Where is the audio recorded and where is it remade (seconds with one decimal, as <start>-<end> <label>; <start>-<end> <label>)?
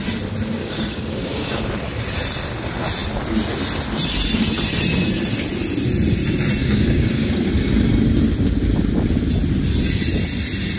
0.0-0.6 recorded; 0.6-1.6 remade; 1.6-6.6 recorded; 6.6-7.5 remade; 7.5-10.8 recorded